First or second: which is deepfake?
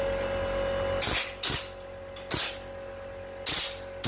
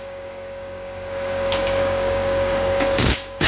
second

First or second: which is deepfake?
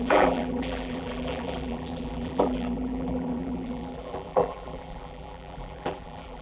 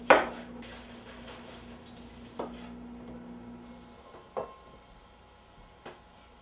first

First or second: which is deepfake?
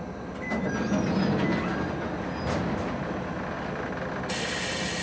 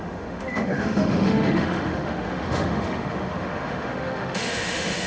second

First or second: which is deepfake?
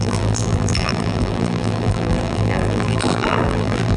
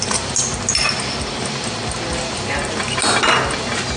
first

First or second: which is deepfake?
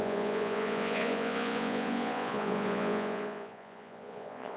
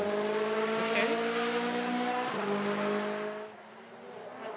first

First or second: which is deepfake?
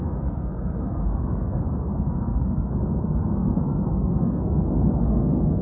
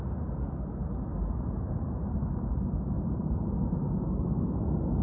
first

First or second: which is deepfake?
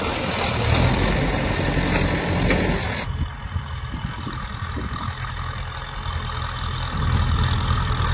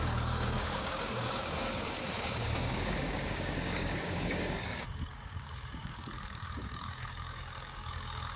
second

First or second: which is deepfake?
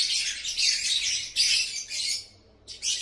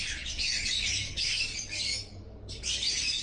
second